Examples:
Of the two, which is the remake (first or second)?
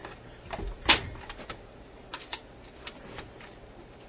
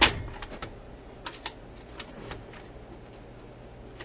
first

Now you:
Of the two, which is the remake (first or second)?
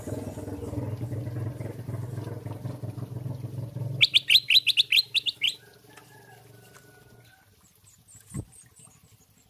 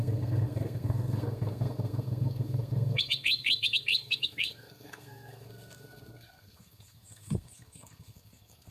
second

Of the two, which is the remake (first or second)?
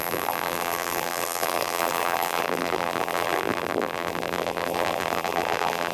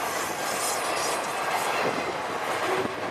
first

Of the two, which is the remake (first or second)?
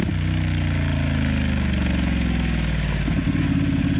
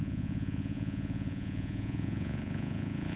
second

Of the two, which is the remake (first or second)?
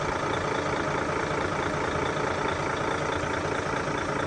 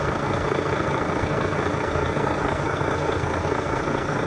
second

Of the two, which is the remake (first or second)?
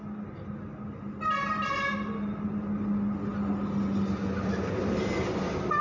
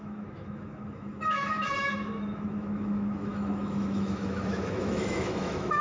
second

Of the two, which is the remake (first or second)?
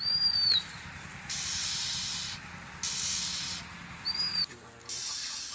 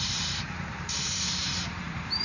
second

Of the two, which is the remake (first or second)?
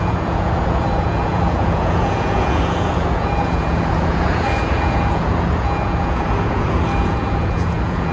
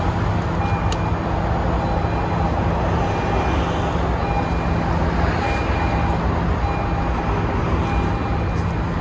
first